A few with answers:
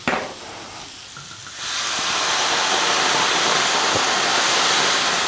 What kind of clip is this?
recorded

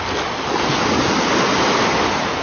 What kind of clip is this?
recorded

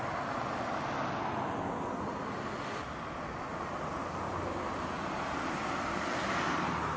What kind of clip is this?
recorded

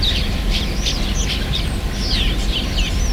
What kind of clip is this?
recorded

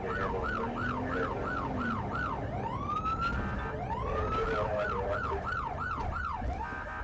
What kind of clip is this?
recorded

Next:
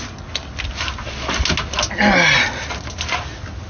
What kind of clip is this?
recorded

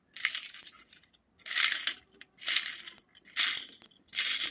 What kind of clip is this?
recorded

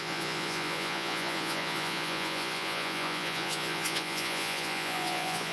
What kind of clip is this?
remade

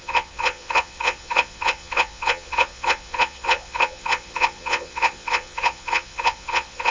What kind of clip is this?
remade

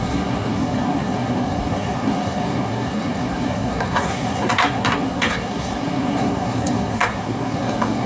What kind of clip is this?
remade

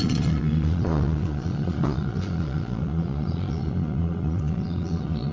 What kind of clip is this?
remade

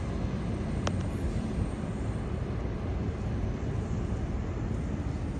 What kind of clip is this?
recorded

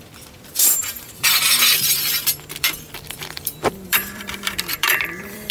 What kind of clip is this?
remade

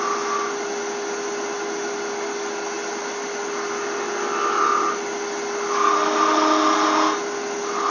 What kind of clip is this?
recorded